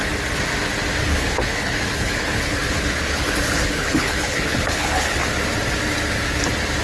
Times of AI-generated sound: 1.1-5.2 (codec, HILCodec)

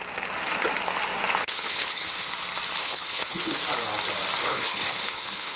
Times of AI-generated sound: 1.4-2.3 (codec, HILCodec); 2.8-3.6; 4.4-5.6

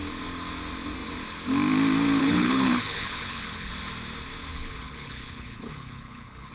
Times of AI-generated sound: 2.2-3.7 (codec, HILCodec); 4.5-6.5

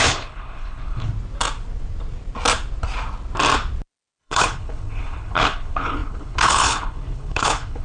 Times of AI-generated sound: 0.0-1.1 (codec, HILCodec); 4.2-7.8